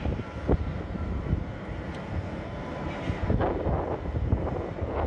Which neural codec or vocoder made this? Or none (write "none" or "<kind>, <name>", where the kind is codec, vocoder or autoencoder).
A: none